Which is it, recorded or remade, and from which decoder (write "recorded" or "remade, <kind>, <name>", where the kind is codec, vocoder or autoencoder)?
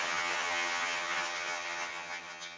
remade, vocoder, HiFi-GAN